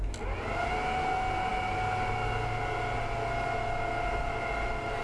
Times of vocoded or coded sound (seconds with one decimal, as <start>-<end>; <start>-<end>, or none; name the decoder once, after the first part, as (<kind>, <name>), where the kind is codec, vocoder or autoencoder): none